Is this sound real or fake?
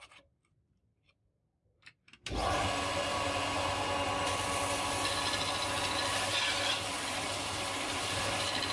real